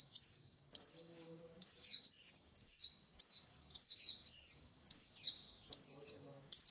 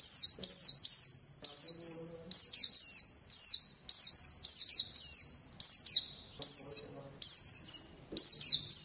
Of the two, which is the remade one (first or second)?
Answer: first